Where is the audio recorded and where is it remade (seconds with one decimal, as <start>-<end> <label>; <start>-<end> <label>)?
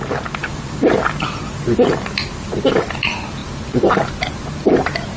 0.0-5.2 recorded